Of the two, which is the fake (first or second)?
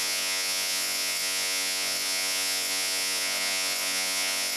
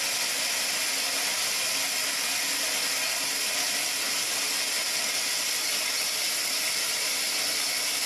first